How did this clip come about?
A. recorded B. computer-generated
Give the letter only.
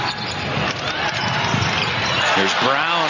A